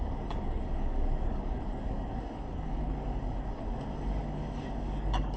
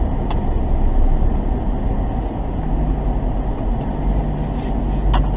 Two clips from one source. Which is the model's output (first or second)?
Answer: first